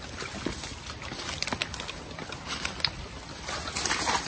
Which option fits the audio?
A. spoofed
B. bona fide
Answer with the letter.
B